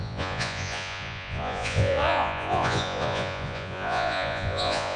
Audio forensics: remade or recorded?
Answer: remade